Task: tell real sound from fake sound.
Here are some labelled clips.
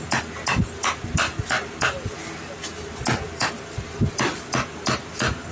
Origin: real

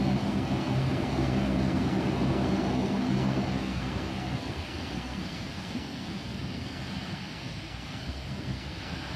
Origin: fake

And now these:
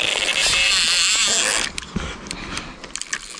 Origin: real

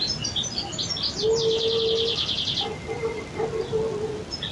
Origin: real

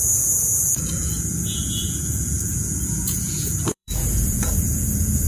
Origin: fake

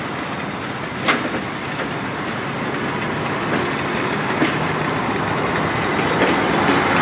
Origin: real